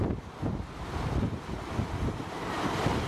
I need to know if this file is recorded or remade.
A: recorded